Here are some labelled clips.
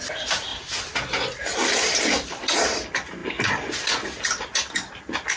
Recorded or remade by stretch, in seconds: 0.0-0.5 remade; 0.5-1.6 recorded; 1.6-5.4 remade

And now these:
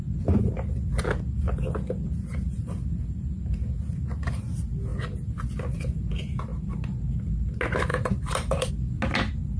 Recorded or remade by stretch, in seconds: 0.0-2.3 recorded; 2.3-3.4 remade; 3.4-7.9 recorded; 7.9-8.7 remade; 8.7-9.6 recorded

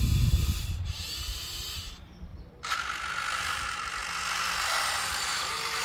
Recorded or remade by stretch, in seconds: 0.0-2.3 remade; 2.3-3.5 recorded; 3.5-4.0 remade; 4.0-4.8 recorded; 4.8-5.8 remade